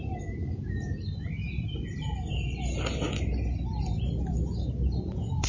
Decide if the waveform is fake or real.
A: real